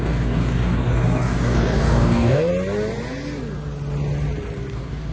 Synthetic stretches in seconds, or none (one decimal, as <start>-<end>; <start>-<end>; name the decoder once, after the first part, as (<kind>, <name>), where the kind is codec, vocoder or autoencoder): 0.0-2.5 (codec, DAC); 4.6-5.1